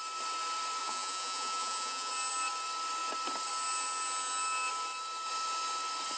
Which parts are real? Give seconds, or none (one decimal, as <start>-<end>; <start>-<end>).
0.0-0.8; 2.1-6.2